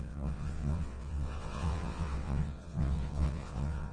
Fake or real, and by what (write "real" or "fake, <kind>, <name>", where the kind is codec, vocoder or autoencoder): fake, vocoder, WaveNeXt